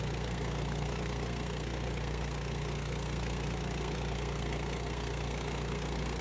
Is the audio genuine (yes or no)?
no